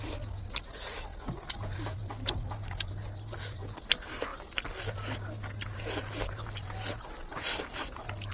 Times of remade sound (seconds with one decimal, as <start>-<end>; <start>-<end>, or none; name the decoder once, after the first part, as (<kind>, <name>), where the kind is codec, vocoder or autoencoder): none